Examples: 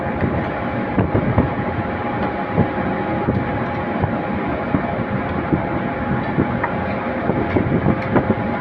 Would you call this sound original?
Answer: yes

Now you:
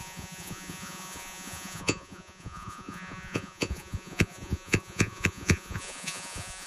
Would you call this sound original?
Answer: no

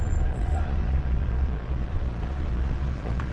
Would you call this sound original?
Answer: no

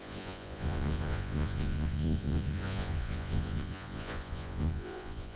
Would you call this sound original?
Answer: no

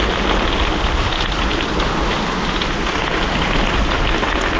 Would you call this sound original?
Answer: yes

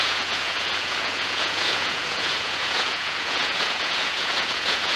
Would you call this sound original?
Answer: no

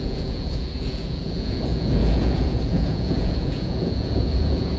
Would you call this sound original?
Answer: no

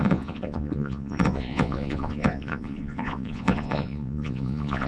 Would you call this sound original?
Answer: no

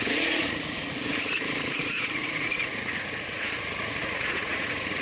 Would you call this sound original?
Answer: no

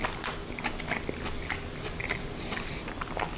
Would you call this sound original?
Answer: yes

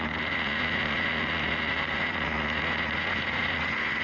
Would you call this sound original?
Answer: no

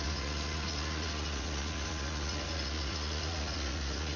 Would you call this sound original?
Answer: no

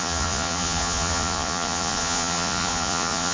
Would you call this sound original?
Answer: no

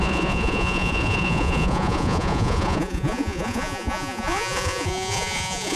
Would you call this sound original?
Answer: no